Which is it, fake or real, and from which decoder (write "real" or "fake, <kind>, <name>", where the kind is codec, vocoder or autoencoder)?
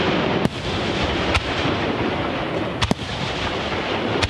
real